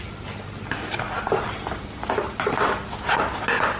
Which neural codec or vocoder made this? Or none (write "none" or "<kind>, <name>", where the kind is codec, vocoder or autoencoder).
none